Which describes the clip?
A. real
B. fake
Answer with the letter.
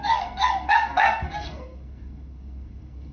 B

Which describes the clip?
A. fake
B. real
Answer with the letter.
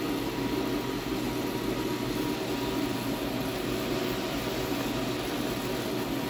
B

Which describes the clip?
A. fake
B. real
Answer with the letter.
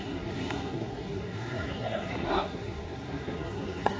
A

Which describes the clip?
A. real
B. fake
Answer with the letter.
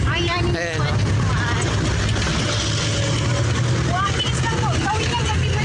A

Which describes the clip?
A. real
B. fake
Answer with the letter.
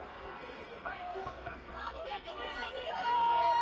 B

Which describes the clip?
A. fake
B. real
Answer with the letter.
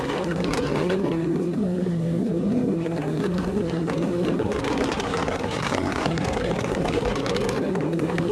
A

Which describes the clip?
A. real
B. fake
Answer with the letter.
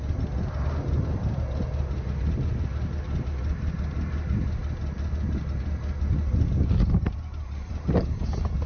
A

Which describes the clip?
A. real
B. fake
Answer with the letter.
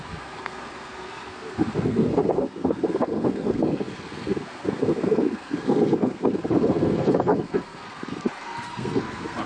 B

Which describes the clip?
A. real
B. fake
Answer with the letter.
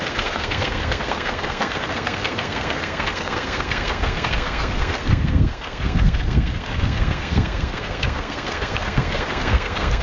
B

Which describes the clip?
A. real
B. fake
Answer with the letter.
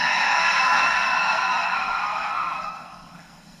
B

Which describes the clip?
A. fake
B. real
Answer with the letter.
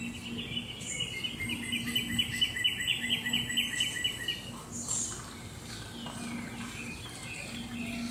B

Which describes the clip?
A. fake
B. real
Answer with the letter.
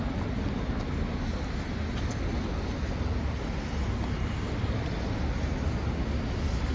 B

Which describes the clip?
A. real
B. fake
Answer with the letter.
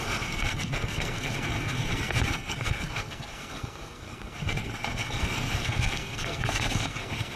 B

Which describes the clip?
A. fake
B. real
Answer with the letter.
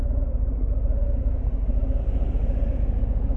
B